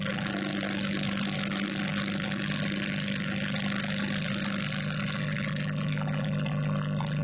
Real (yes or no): yes